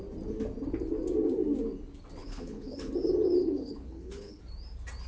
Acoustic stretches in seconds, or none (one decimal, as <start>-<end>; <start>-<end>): 0.0-2.2; 2.9-3.4; 4.4-5.1